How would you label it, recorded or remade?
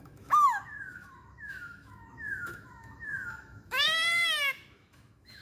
remade